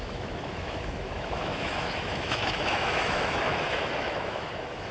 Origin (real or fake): fake